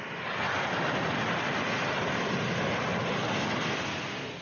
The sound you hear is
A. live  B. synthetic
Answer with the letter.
A